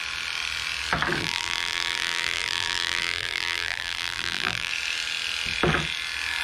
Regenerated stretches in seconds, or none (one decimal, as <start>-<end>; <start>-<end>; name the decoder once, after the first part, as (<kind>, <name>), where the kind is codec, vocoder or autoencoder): 1.2-4.7 (vocoder, BigVGAN v2)